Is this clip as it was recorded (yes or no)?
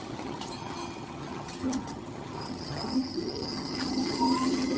no